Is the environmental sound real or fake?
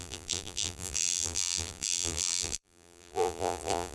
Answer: fake